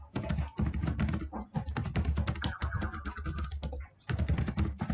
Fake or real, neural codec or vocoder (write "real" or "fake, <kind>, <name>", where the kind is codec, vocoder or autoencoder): real